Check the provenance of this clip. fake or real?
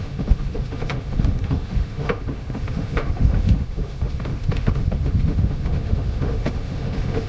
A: fake